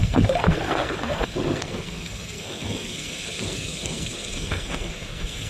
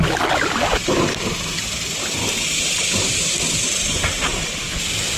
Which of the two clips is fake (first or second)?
first